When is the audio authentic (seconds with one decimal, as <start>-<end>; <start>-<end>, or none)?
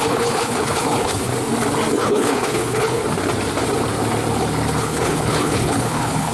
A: 1.3-2.0; 3.0-4.8